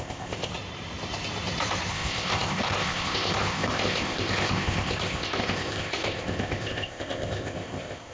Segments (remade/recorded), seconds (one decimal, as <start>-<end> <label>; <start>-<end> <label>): 0.0-0.5 remade; 0.5-1.9 recorded; 1.9-8.1 remade